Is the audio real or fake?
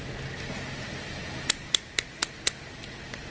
real